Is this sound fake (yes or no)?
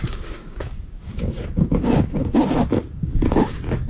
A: yes